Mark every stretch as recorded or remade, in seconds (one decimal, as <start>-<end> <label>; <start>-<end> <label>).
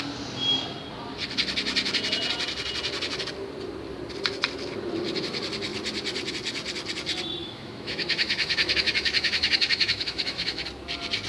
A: 0.0-7.4 recorded; 7.4-10.6 remade; 10.6-11.3 recorded